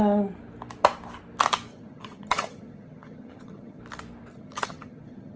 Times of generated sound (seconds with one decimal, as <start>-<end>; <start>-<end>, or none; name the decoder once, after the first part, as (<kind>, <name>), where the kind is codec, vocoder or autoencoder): 1.7-3.8 (vocoder, HiFi-GAN); 4.3-5.4